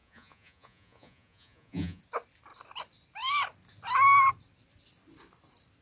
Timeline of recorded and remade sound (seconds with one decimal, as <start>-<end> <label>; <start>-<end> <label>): 0.0-2.0 remade; 2.0-5.8 recorded